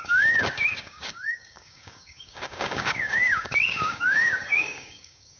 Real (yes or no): no